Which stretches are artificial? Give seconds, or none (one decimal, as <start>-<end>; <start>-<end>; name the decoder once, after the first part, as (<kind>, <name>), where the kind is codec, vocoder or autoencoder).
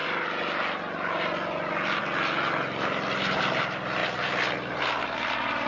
none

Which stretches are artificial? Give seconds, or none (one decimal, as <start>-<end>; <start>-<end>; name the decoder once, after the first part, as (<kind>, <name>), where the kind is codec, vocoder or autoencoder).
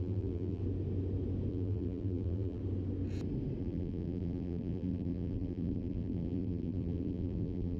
0.0-0.6 (vocoder, BigVGAN v2); 1.5-2.6; 3.6-7.8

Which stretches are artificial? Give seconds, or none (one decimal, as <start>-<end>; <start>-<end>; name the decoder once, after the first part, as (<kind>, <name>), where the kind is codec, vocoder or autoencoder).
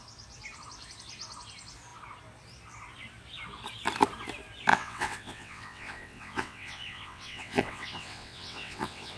4.7-9.2 (vocoder, WaveNeXt)